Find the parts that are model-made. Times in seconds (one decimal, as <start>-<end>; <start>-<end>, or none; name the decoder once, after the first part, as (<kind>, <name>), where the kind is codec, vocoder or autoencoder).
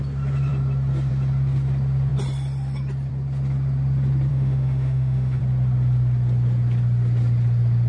4.3-5.4 (autoencoder, DAC-VAE)